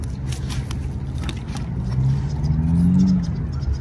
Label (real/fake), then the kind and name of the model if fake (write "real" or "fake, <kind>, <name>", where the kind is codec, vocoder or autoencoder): real